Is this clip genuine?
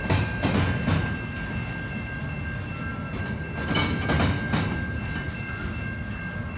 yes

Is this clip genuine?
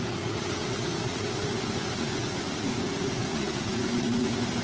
no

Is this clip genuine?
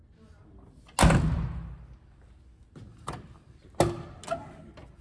yes